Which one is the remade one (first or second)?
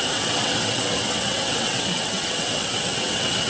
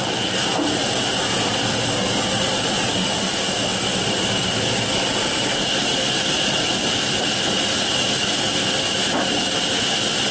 first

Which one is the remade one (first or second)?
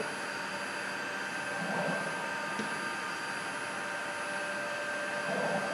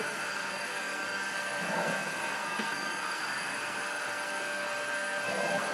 second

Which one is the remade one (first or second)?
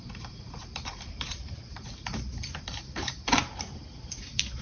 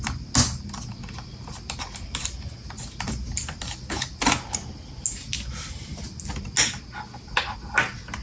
first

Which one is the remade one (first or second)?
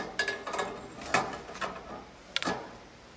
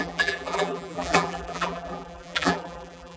second